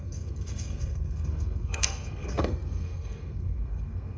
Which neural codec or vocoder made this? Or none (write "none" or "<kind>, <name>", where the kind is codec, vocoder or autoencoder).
codec, SNAC